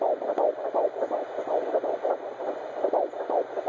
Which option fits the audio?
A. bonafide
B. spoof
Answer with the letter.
A